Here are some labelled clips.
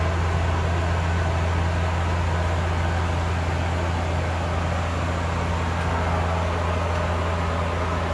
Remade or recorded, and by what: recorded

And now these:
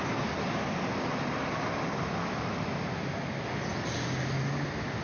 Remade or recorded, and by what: recorded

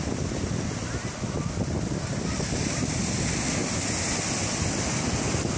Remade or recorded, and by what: recorded